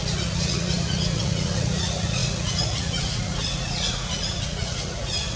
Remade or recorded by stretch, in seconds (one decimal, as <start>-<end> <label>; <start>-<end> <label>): 0.0-5.4 remade